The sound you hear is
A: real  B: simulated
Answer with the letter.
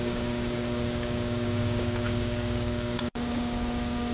B